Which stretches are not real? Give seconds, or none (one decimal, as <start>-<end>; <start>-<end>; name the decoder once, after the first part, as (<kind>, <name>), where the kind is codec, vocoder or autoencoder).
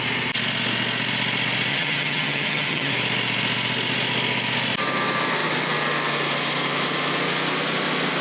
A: 1.7-2.9 (vocoder, HiFi-GAN)